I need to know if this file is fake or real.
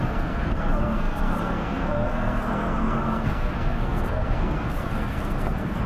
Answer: fake